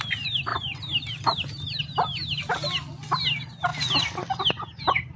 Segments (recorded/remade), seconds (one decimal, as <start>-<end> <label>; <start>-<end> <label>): 0.0-0.5 recorded; 0.5-1.8 remade; 1.8-5.2 recorded